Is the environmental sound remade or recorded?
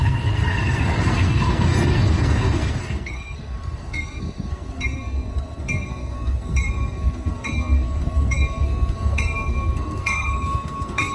remade